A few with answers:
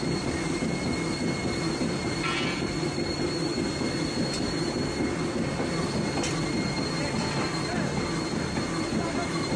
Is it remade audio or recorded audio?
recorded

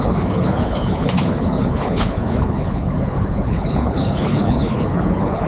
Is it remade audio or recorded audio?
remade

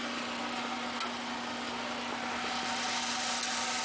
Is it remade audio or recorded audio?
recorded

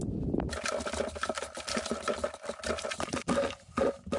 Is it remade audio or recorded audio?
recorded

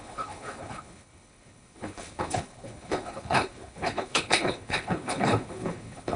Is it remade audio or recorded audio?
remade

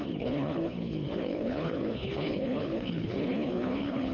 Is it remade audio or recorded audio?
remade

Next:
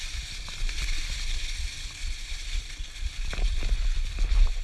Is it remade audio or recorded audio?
recorded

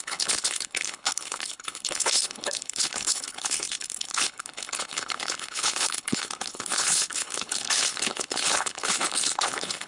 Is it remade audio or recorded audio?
remade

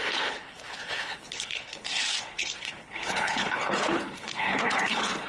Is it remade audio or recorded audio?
remade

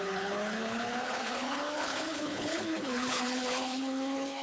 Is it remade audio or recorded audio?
remade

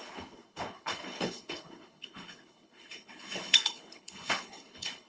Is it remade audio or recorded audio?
remade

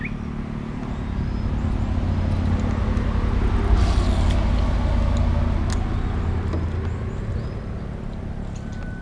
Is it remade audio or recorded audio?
recorded